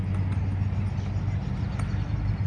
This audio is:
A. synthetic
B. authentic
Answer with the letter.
B